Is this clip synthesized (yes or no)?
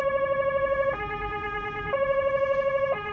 no